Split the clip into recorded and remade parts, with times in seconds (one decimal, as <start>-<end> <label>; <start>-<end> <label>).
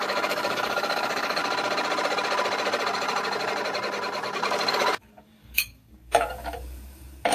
0.0-1.4 remade; 1.4-4.7 recorded; 4.7-7.3 remade